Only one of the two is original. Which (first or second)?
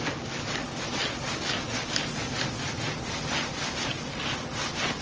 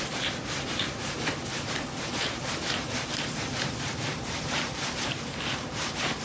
first